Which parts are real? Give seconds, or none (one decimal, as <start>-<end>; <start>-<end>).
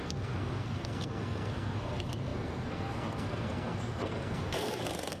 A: none